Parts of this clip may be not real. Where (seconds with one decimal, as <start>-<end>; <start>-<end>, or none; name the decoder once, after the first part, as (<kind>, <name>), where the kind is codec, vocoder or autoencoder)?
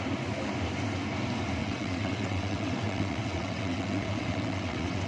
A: 1.6-5.1 (vocoder, WaveNeXt)